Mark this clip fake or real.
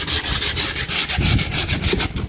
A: real